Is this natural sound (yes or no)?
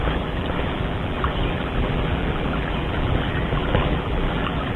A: no